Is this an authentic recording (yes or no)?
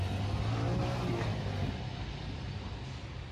yes